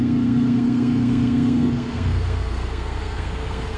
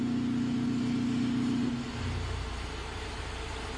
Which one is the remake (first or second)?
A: first